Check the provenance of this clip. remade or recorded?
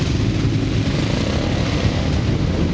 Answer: recorded